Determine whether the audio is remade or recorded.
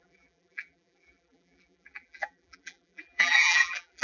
remade